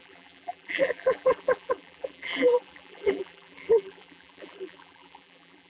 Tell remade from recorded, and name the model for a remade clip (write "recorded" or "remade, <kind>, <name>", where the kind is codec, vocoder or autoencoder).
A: remade, vocoder, BigVGAN v2